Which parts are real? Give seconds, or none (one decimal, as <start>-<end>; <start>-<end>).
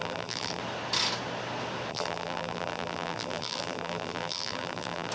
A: 0.6-1.9